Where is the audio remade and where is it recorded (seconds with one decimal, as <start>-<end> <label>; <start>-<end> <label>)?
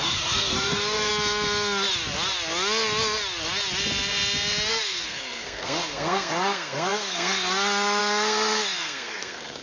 0.0-1.1 remade; 1.1-4.7 recorded; 4.7-9.6 remade